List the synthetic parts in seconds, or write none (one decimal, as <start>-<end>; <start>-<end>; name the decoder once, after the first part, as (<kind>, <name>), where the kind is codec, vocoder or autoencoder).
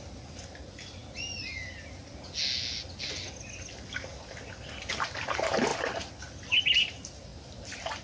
5.7-6.6 (vocoder, BigVGAN v2); 7.3-8.0